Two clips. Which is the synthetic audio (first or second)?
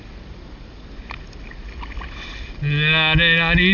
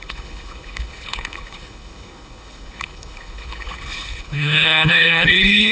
second